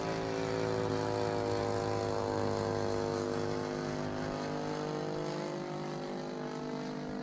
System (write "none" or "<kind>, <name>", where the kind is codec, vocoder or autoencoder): none